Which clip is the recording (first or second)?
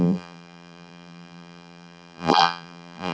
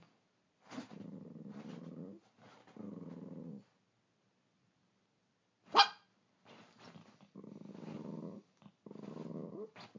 second